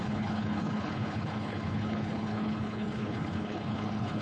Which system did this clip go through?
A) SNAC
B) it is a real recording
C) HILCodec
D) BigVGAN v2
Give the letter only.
C